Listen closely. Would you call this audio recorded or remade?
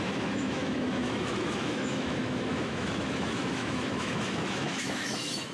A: remade